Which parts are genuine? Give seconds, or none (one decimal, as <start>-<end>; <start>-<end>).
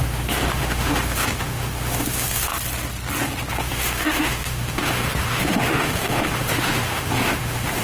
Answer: 2.5-3.5